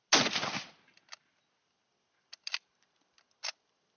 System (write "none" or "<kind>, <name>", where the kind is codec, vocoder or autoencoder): none